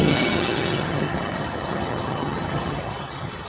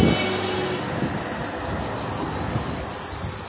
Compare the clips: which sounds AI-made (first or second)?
first